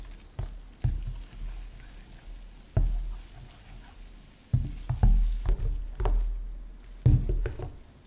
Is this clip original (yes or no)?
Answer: yes